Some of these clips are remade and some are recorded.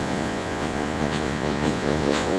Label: remade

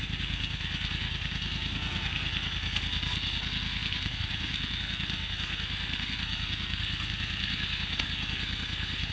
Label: remade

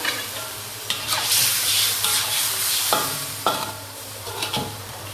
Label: remade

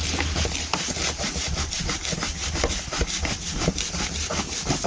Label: recorded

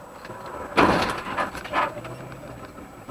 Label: recorded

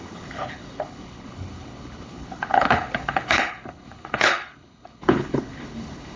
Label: remade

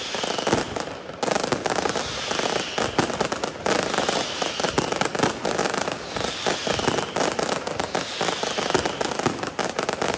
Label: recorded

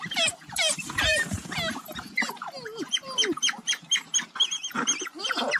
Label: recorded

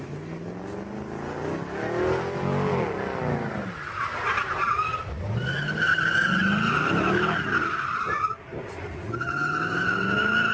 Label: recorded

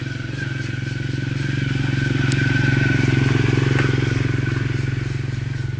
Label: recorded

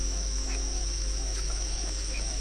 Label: remade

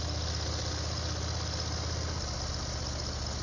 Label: recorded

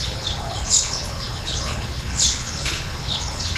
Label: remade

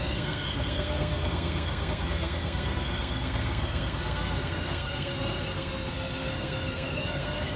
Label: remade